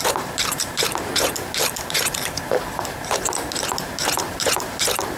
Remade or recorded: remade